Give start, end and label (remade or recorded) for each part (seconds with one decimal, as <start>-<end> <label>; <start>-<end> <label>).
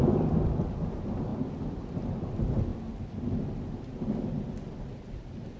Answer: 0.0-5.6 recorded